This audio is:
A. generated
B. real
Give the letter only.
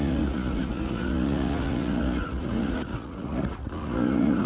A